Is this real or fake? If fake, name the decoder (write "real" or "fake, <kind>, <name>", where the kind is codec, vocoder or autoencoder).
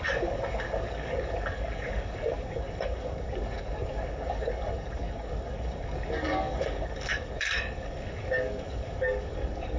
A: fake, codec, DAC